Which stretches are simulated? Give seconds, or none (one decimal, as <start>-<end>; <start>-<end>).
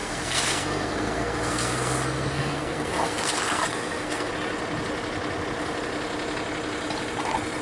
0.0-4.3